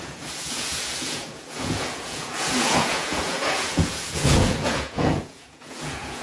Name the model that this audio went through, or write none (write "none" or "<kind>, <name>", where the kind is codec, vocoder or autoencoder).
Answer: vocoder, Vocos